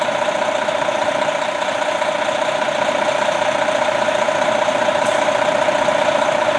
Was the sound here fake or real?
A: real